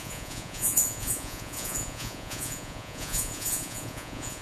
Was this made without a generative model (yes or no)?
no